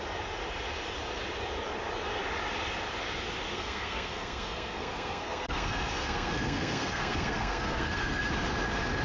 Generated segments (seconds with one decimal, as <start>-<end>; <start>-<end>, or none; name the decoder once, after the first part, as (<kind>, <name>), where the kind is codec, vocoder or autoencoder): 3.5-8.3 (codec, SNAC)